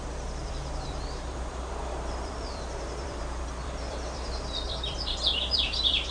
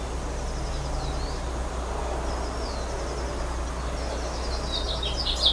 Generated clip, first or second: first